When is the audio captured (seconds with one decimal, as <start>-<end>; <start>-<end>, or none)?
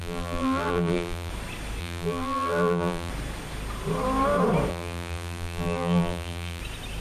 1.3-1.8; 3.1-4.7; 6.6-7.0